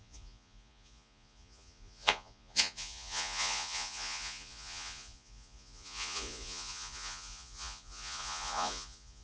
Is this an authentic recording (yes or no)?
no